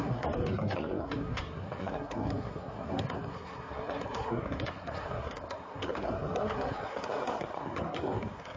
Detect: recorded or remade remade